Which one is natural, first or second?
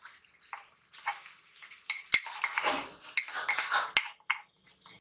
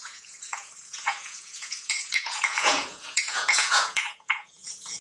first